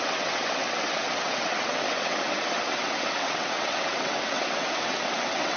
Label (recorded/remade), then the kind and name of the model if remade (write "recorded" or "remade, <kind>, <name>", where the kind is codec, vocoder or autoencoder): remade, vocoder, WaveNeXt